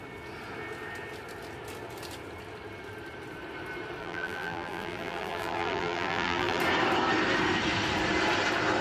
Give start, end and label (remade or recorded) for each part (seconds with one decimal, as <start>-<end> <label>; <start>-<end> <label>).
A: 0.0-4.0 recorded; 4.0-6.6 remade; 6.6-8.8 recorded